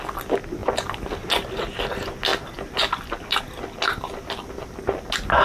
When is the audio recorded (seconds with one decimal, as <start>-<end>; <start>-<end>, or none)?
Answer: 0.0-5.4